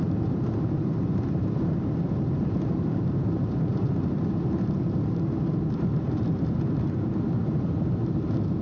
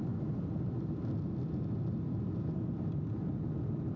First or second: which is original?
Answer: second